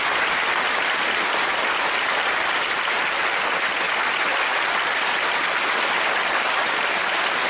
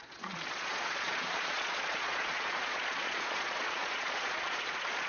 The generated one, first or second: second